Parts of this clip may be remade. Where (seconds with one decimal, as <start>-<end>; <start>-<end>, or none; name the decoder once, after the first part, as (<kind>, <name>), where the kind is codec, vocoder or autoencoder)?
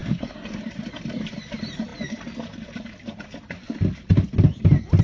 0.0-0.6 (codec, SNAC)